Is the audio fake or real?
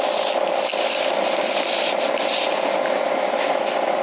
real